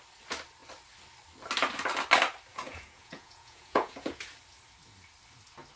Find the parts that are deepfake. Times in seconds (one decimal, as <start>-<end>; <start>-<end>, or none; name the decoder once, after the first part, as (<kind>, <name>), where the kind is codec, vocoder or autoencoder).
2.5-4.2 (vocoder, Vocos)